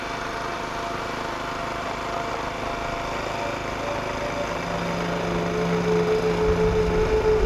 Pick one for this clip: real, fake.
real